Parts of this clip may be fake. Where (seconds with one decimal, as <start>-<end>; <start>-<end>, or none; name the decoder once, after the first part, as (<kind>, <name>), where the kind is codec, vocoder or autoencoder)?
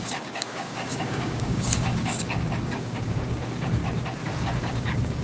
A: 0.0-3.8 (codec, DAC); 4.4-5.2